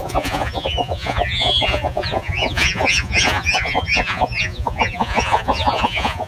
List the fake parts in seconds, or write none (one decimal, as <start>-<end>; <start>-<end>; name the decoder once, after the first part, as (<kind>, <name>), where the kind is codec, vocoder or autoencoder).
0.0-6.3 (vocoder, Vocos)